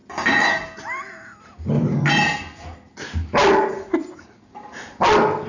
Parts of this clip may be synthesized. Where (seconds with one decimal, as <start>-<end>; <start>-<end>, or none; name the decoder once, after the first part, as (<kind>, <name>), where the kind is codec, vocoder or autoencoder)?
none